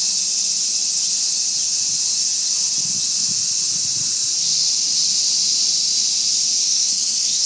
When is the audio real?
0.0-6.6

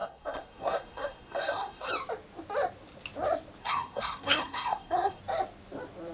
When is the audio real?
1.9-3.6; 5.2-6.1

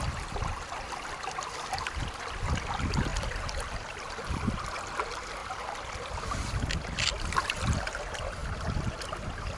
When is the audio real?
0.0-9.6

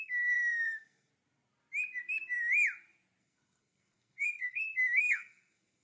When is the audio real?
1.1-3.2

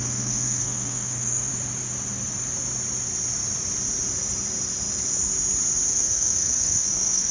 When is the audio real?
1.5-5.9

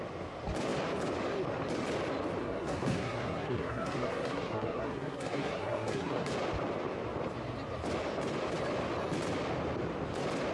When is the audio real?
0.0-2.4; 6.3-10.5